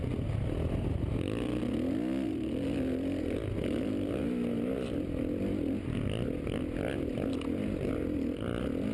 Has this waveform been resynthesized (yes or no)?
no